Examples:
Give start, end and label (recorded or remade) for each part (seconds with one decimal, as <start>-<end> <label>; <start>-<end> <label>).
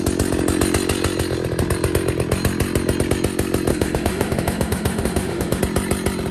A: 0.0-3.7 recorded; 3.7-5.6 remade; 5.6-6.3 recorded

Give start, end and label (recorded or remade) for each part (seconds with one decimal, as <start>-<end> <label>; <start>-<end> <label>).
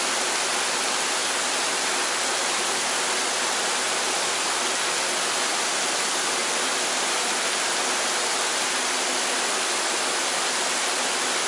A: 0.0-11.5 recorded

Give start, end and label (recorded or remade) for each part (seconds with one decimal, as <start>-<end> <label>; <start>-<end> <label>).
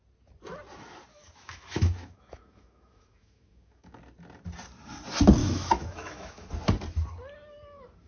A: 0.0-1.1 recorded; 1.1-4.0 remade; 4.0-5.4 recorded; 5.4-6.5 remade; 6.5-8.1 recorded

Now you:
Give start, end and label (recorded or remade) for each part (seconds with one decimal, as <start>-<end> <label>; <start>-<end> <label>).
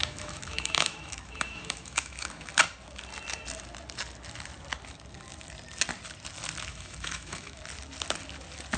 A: 0.0-2.5 remade; 2.5-6.7 recorded; 6.7-7.6 remade; 7.6-8.8 recorded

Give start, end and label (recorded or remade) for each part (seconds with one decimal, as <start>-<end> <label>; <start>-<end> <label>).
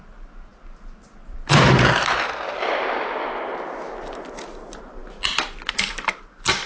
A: 0.0-6.7 recorded